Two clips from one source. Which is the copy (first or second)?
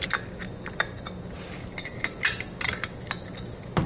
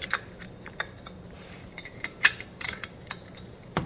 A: second